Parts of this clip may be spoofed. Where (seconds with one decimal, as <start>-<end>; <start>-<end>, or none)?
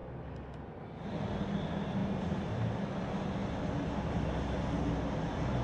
2.0-3.0